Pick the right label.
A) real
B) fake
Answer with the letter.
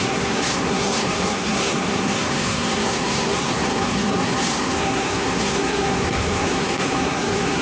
B